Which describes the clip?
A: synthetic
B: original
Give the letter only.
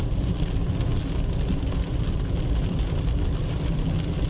B